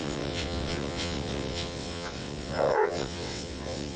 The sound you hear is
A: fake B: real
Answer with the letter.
A